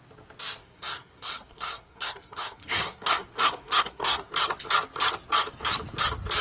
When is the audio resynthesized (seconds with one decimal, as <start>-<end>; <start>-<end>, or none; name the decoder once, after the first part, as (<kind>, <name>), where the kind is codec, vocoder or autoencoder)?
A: 0.6-4.3 (codec, SNAC)